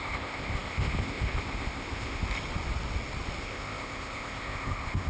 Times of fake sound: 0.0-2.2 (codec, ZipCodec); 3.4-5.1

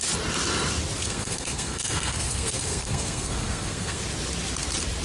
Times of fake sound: 1.0-4.0 (codec, SNAC)

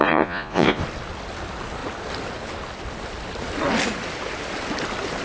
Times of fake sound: 0.0-0.8 (vocoder, Vocos)